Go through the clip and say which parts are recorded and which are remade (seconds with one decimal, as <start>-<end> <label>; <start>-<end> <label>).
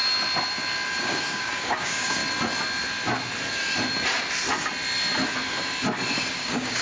0.0-1.0 recorded; 1.0-2.2 remade; 2.2-6.3 recorded; 6.3-6.8 remade